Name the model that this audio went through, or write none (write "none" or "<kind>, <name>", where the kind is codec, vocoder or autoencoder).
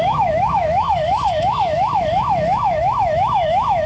autoencoder, DAC-VAE